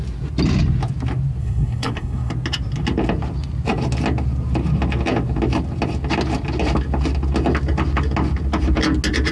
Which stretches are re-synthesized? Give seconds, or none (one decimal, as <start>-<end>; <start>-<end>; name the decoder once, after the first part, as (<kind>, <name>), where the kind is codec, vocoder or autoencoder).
1.4-2.3 (codec, SNAC)